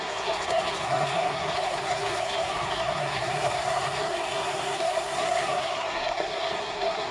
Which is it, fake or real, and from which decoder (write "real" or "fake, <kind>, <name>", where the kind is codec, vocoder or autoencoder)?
fake, codec, SNAC